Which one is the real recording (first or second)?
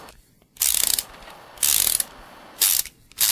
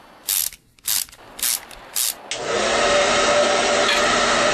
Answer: second